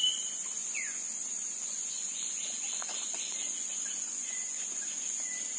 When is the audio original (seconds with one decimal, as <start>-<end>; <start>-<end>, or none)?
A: none